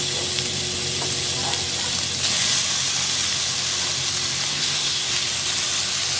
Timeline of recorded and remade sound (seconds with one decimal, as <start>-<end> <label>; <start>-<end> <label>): 0.0-4.5 recorded; 4.5-5.1 remade; 5.1-6.2 recorded